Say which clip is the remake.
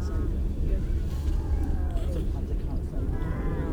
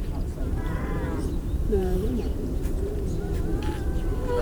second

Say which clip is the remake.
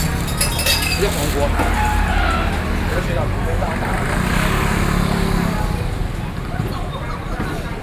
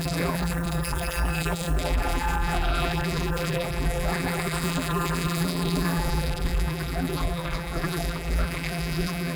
second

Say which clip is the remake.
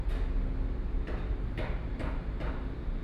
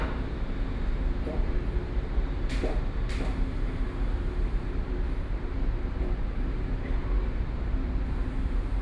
second